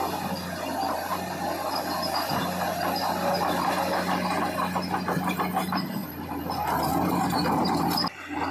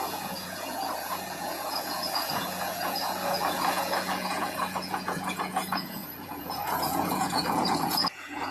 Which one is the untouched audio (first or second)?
first